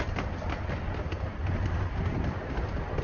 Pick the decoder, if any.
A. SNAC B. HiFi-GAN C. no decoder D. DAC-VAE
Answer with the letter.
C